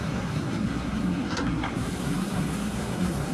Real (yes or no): no